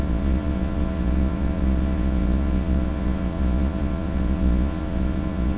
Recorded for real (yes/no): no